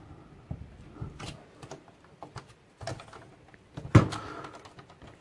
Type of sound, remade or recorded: recorded